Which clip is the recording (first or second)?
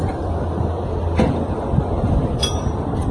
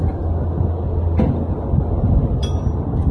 second